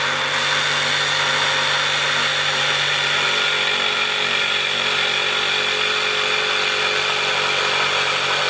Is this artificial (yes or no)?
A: no